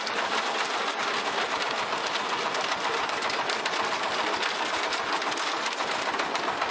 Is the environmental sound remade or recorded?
recorded